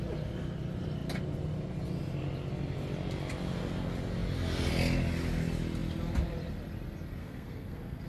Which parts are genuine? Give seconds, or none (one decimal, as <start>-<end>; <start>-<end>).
0.0-7.2